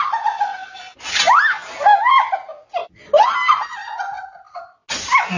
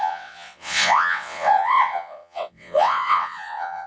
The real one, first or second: first